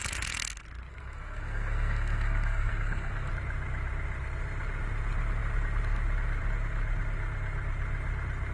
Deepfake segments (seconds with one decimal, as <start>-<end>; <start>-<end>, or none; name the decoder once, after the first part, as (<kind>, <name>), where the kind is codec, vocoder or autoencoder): 0.9-3.3 (codec, SNAC)